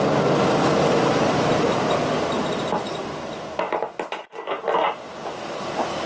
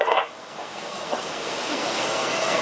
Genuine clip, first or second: first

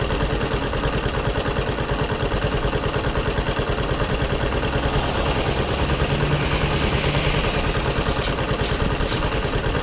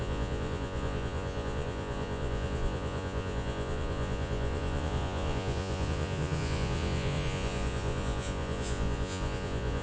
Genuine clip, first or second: first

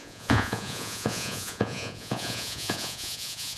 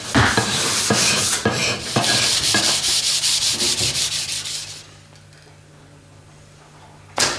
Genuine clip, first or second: second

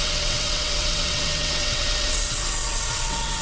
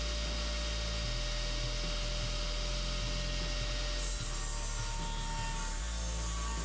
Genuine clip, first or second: second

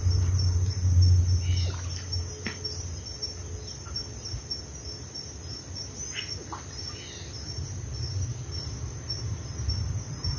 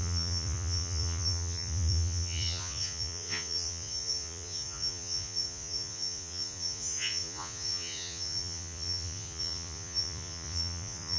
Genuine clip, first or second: first